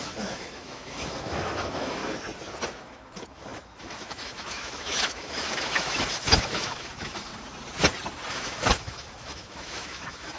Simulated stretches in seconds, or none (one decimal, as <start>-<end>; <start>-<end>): 0.0-2.0; 2.8-7.3; 8.3-10.4